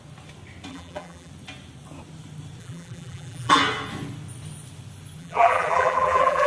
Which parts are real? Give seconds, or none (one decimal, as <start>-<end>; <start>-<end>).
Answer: 0.0-0.7; 1.3-2.6; 3.6-5.2